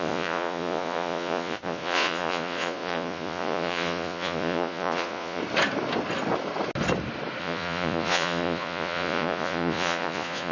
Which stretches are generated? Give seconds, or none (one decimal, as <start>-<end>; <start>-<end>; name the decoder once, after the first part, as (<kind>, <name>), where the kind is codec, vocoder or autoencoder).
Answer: 0.0-5.4 (vocoder, Vocos); 7.4-10.5